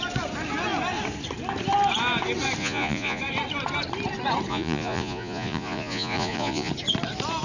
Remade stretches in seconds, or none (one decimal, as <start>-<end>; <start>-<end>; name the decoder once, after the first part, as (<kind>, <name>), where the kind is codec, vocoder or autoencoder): 2.6-3.2 (vocoder, Vocos); 4.5-6.7